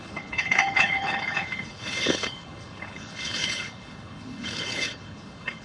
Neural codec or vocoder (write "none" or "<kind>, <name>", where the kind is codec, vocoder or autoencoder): codec, HILCodec